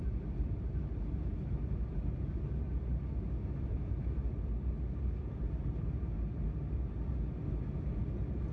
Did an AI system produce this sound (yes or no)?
no